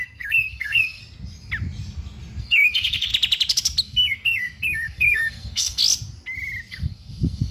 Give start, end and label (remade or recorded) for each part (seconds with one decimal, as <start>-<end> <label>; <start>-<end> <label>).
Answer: 0.0-1.0 remade; 1.0-2.4 recorded; 2.4-3.1 remade; 3.1-3.8 recorded; 3.8-5.8 remade; 5.8-6.7 recorded; 6.7-7.5 remade